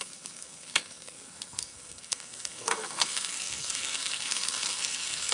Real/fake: fake